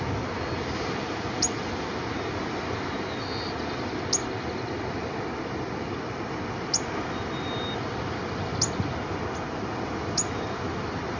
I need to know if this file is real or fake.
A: real